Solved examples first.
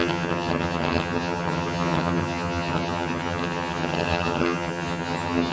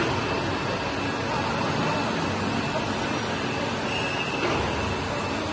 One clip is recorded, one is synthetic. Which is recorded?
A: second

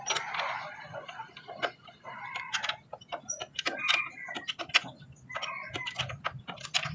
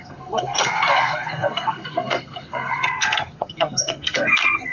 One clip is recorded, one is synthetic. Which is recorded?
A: first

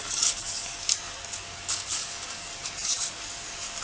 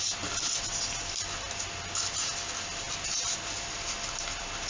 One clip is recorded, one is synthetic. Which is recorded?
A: second